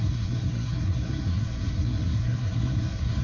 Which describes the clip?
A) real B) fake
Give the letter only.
B